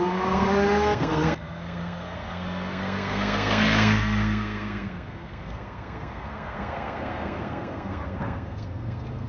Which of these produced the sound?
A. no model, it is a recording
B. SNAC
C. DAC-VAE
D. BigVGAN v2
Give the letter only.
B